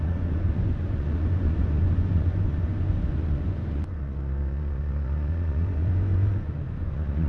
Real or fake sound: fake